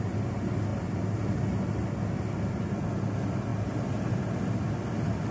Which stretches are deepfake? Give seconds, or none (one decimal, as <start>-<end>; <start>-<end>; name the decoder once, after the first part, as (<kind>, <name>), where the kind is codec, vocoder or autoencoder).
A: 0.7-1.3 (vocoder, BigVGAN v2)